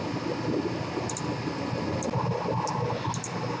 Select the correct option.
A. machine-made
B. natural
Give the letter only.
B